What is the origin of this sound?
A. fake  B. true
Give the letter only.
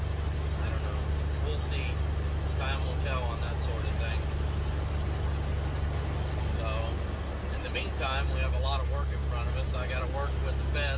B